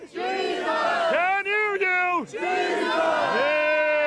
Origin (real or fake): real